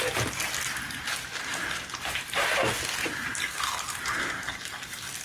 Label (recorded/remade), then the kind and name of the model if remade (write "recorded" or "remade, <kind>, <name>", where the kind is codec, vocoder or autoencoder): recorded